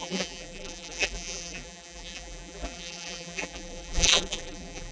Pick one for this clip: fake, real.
fake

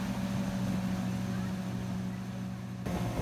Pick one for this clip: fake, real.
real